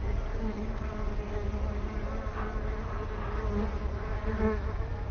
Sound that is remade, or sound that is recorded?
recorded